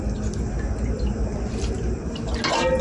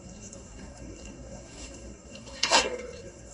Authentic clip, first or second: first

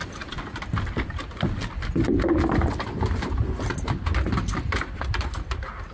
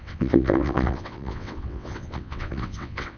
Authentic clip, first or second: first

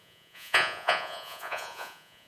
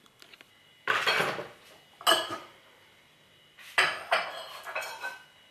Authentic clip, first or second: second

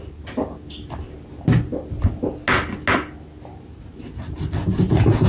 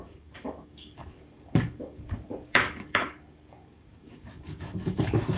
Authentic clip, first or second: first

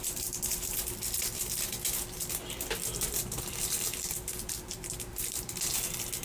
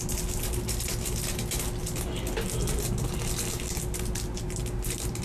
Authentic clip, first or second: second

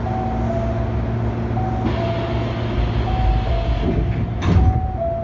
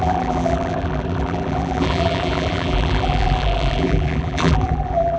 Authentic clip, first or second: first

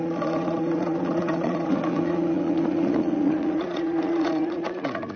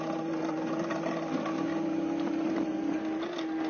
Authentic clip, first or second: second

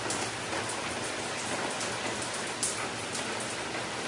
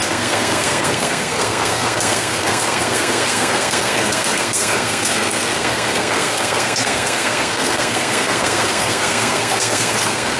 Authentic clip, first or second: first